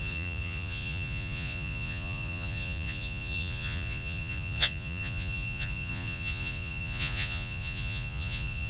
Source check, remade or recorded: remade